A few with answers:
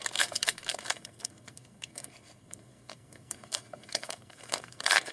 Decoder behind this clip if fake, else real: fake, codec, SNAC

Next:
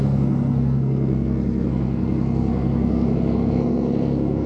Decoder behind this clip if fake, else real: fake, codec, SNAC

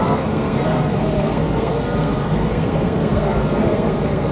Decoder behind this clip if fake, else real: fake, codec, SNAC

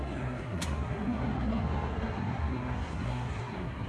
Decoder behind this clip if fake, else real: fake, codec, SNAC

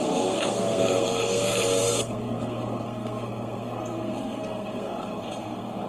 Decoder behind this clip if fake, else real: fake, codec, SNAC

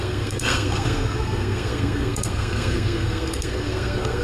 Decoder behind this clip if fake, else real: fake, codec, SNAC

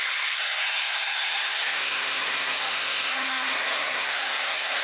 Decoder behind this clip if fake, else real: fake, codec, SNAC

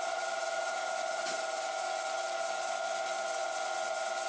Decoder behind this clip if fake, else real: real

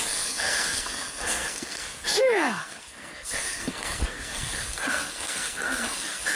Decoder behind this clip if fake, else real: fake, codec, SNAC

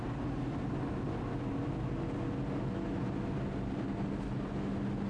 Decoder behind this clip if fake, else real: real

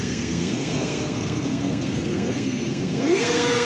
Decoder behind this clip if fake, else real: fake, codec, SNAC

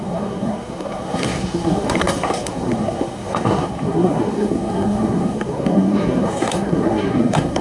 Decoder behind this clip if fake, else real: fake, codec, SNAC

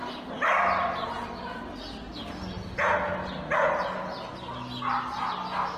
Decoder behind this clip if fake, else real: real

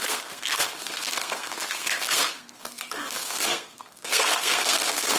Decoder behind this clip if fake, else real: fake, codec, SNAC